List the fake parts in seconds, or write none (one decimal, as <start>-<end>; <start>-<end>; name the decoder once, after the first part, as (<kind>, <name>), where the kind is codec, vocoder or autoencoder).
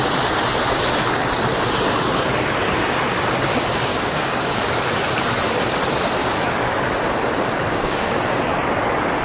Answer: 3.9-4.6 (codec, DAC); 7.7-8.4